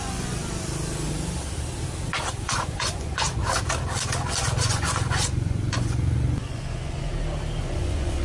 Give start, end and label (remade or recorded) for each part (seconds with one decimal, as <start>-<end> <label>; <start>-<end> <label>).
0.0-0.4 remade; 0.4-2.4 recorded; 2.4-3.4 remade; 3.4-4.6 recorded; 4.6-7.1 remade; 7.1-7.6 recorded; 7.6-8.2 remade